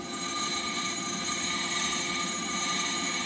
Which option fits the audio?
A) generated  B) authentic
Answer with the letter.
A